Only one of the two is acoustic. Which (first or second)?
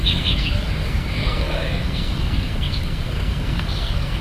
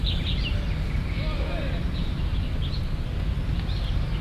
second